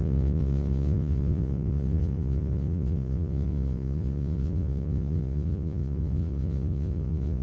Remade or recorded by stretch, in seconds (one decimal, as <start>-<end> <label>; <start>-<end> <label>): 0.0-7.4 remade